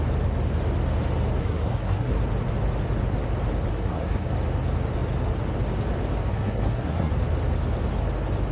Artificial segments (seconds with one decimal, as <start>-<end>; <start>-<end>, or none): 1.4-2.2; 3.7-4.3; 6.3-7.1